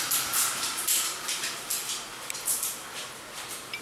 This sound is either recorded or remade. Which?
remade